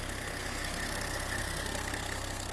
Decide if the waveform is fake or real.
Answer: fake